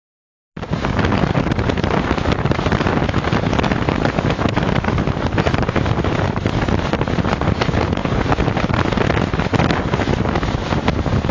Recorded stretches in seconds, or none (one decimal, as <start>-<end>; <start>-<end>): 0.0-11.3